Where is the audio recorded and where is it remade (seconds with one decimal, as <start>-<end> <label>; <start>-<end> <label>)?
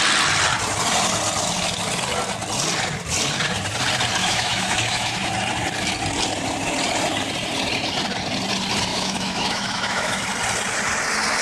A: 0.0-4.2 recorded; 4.2-5.3 remade; 5.3-8.9 recorded; 8.9-10.2 remade; 10.2-11.4 recorded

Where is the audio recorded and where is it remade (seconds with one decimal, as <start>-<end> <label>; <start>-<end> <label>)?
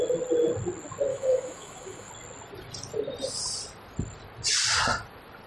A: 0.0-1.1 recorded; 1.1-2.1 remade; 2.1-5.5 recorded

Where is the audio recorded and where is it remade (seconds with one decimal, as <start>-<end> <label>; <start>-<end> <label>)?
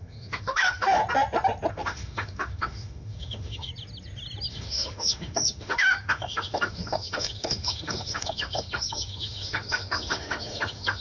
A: 0.0-1.0 remade; 1.0-1.7 recorded; 1.7-3.7 remade; 3.7-4.5 recorded; 4.5-11.0 remade